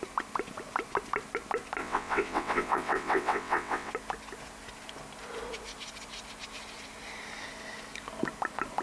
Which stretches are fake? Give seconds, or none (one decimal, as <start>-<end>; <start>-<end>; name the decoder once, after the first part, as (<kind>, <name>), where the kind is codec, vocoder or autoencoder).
1.8-3.9 (vocoder, WaveNeXt)